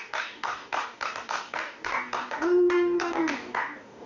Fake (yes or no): yes